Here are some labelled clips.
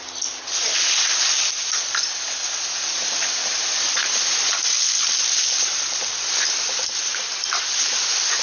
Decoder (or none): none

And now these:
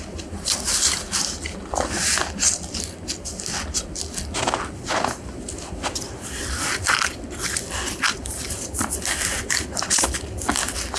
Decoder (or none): none